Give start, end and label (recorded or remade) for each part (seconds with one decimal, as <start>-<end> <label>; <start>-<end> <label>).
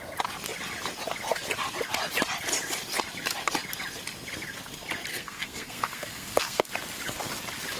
0.0-5.1 recorded; 5.1-6.7 remade; 6.7-7.8 recorded